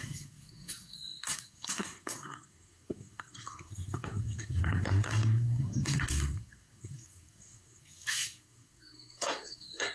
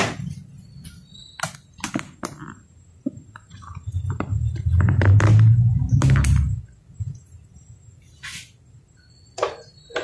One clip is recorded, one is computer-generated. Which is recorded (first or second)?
second